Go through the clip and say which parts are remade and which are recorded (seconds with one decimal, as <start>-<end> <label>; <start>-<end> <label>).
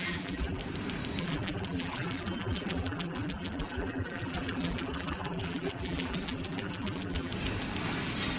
0.0-0.6 remade; 0.6-1.2 recorded; 1.2-7.3 remade; 7.3-8.4 recorded